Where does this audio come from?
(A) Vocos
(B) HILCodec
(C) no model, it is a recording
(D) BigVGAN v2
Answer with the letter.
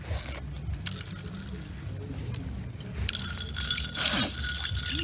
C